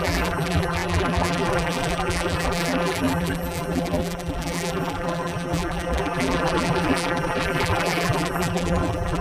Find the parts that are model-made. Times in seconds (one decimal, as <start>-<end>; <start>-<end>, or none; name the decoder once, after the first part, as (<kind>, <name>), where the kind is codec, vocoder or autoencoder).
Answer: 0.0-9.2 (vocoder, BigVGAN v2)